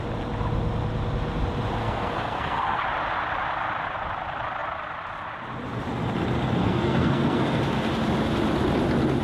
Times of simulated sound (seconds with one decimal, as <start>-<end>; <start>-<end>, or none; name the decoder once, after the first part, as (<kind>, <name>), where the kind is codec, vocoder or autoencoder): 1.8-2.8 (codec, SNAC); 6.6-7.6